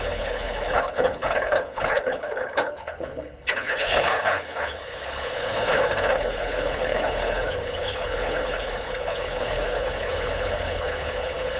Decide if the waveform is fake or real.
fake